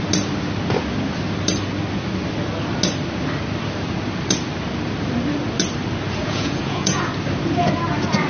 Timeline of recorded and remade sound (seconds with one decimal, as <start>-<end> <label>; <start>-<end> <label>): 0.0-6.2 recorded; 6.2-7.1 remade; 7.1-8.3 recorded